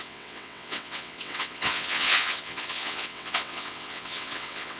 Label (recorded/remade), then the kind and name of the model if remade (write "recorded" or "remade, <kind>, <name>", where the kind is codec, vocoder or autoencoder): remade, vocoder, WaveNeXt